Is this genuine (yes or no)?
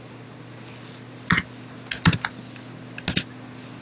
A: yes